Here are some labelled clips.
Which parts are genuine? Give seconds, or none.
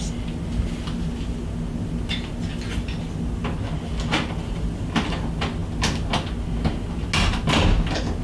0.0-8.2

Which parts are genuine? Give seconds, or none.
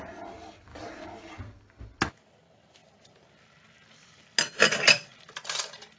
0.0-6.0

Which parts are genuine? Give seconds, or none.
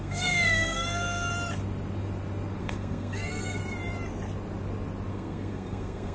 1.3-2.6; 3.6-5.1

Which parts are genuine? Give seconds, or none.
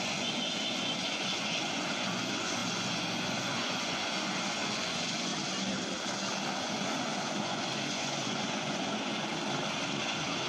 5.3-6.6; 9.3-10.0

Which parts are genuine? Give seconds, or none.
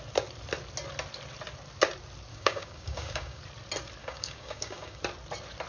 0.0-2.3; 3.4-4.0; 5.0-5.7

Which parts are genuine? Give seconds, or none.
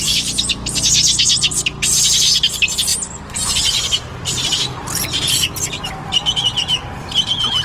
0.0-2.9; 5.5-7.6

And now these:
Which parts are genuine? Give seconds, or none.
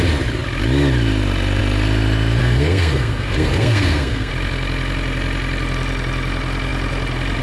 0.0-2.4; 4.3-7.4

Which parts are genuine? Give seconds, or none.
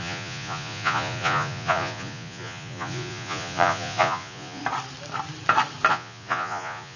4.6-5.9